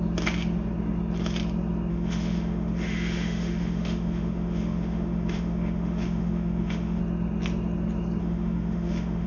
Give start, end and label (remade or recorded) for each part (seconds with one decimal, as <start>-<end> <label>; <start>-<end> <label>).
0.0-1.9 recorded; 1.9-7.0 remade; 7.0-8.2 recorded; 8.2-9.3 remade

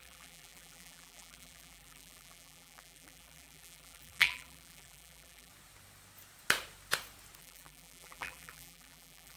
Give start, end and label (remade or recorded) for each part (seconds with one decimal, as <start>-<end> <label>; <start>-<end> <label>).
0.0-5.5 remade; 5.5-7.4 recorded; 7.4-9.4 remade

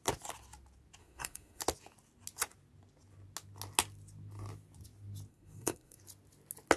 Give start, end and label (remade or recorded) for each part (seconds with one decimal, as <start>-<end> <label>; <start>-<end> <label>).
0.0-1.0 recorded; 1.0-1.6 remade; 1.6-5.3 recorded; 5.3-6.0 remade; 6.0-6.8 recorded